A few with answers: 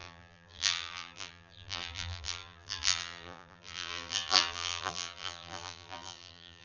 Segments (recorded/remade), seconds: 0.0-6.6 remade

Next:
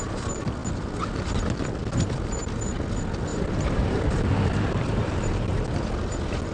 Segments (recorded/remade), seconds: 0.0-3.3 recorded; 3.3-5.6 remade; 5.6-6.5 recorded